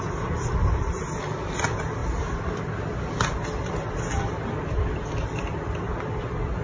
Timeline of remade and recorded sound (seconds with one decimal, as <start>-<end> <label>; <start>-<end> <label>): 0.0-6.6 recorded